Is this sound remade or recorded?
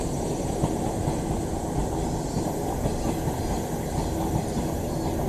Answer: recorded